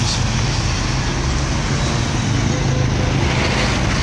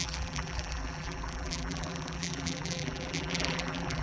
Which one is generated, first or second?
second